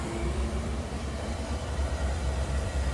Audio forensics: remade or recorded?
remade